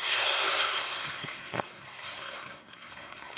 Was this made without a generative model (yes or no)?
no